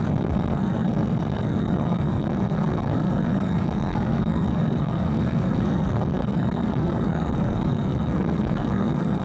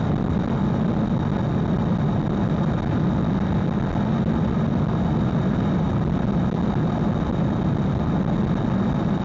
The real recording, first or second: second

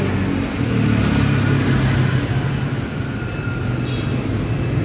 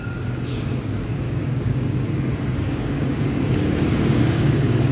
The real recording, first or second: first